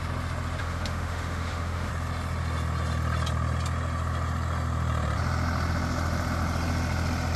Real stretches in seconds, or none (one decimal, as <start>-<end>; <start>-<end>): 0.0-0.6; 1.9-7.4